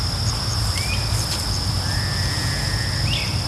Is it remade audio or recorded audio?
recorded